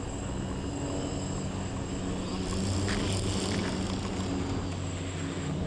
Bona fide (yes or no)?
yes